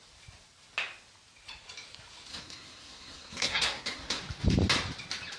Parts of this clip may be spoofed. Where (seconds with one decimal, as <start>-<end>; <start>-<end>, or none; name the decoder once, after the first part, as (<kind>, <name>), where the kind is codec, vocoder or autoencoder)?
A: 2.3-4.2 (codec, SNAC)